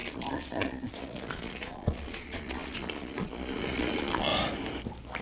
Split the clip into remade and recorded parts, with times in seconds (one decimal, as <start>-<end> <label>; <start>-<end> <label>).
0.0-4.3 remade; 4.3-5.2 recorded